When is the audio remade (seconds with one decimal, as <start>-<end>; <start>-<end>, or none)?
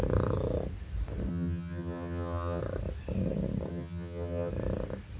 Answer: 1.3-2.6; 3.7-4.5